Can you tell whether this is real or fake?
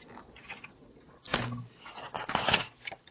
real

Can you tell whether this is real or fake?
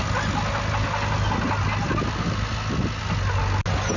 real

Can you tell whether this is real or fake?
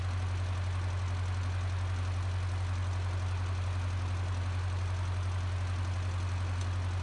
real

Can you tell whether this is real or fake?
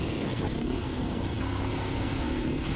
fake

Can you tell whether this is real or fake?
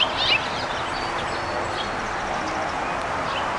real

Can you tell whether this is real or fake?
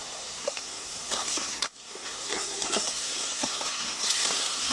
fake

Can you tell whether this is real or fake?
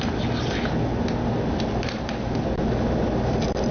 real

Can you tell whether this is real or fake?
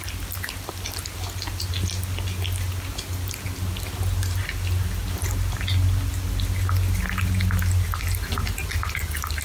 real